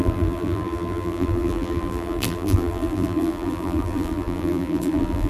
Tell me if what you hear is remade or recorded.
remade